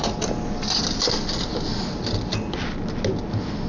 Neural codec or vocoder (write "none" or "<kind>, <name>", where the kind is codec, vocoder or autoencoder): none